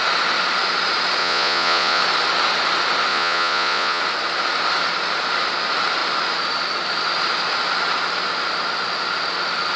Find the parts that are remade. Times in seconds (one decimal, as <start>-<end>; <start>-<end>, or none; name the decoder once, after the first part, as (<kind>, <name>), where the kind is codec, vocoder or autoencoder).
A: 1.2-2.0 (vocoder, Vocos); 3.1-4.0